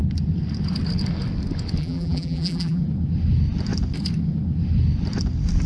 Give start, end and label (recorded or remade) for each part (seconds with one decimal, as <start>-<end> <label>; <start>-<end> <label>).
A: 0.0-1.8 recorded; 1.8-2.8 remade; 2.8-5.7 recorded